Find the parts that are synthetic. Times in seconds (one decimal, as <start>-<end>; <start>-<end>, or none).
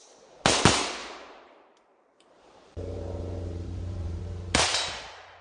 1.0-4.2